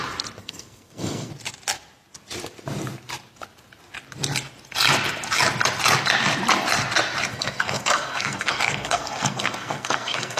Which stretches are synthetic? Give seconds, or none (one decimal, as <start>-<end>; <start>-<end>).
0.4-1.3; 7.3-10.4

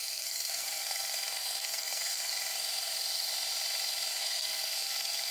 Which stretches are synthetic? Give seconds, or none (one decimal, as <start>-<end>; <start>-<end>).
0.0-2.3; 4.2-5.3

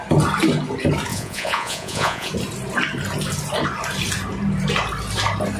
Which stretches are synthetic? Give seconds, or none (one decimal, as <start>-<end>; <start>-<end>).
1.1-2.3

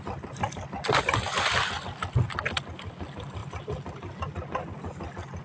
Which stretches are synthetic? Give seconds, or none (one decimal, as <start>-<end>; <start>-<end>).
none

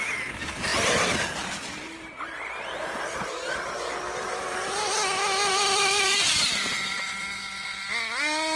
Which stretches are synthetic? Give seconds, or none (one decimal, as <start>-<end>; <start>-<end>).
0.7-4.0; 5.5-7.0

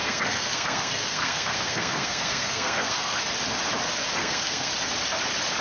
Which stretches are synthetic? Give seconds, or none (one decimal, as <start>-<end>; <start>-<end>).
0.0-3.2; 4.2-4.7

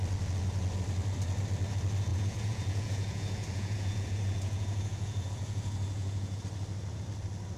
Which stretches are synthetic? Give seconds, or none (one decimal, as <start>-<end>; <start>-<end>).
2.1-6.4